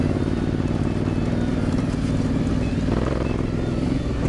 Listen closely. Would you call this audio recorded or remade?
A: recorded